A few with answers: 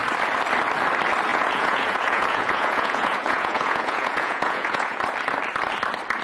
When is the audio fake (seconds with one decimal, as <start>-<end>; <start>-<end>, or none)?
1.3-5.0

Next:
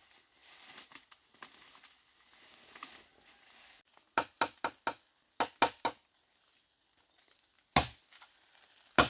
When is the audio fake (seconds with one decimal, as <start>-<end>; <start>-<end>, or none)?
none

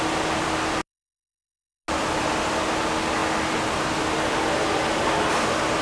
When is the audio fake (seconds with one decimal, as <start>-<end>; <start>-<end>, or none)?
none

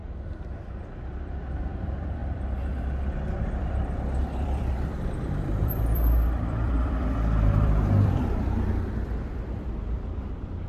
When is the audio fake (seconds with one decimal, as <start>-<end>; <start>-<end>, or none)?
0.6-10.7